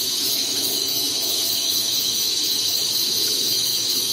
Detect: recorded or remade remade